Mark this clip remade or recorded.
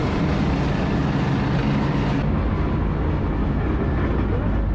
recorded